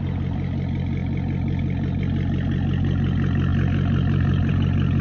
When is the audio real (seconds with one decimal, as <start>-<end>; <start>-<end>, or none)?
0.0-3.5; 4.5-5.0